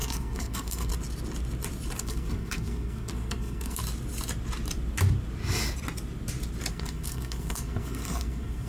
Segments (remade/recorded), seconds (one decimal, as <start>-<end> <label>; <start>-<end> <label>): 0.0-0.9 remade; 0.9-2.0 recorded; 2.0-3.8 remade; 3.8-6.7 recorded; 6.7-8.7 remade

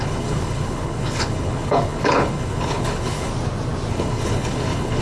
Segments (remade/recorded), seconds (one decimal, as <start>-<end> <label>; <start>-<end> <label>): 0.0-3.3 remade; 3.3-3.9 recorded; 3.9-5.0 remade

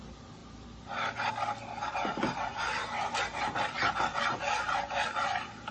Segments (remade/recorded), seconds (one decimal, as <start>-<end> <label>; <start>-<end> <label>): 0.0-5.7 recorded

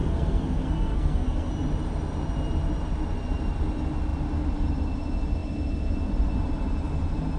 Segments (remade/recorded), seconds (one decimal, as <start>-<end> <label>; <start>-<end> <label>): 0.0-1.5 remade; 1.5-7.4 recorded

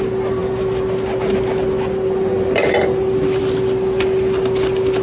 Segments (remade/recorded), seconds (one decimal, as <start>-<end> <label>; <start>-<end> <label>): 0.0-5.0 recorded